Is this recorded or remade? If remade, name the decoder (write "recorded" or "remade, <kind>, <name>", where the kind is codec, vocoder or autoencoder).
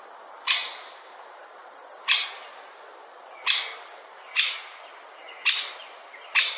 recorded